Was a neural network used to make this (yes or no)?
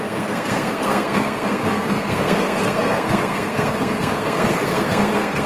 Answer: yes